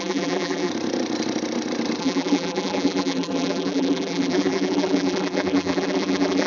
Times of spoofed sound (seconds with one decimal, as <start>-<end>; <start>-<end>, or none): 0.0-0.7; 2.0-6.5